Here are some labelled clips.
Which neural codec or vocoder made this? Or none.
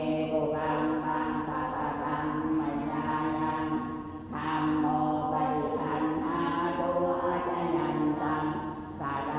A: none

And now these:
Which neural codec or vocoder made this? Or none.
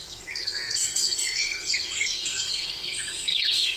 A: codec, SNAC